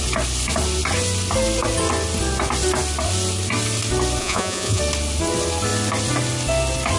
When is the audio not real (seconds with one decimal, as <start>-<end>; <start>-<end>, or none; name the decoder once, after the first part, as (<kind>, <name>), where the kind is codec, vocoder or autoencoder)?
4.2-4.8 (vocoder, Vocos)